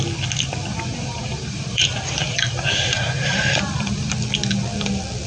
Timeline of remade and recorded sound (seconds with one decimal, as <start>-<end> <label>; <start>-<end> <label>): 0.0-0.9 recorded; 0.9-4.1 remade; 4.1-5.3 recorded